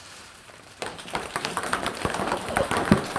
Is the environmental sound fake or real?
fake